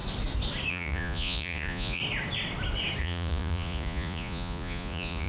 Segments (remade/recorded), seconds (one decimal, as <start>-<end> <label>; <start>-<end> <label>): 0.0-0.7 recorded; 0.7-2.0 remade; 2.0-3.0 recorded; 3.0-5.3 remade